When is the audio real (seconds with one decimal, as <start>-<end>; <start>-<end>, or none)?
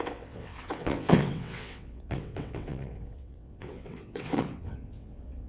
none